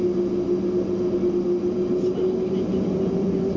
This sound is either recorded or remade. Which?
recorded